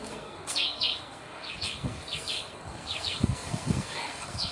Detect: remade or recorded remade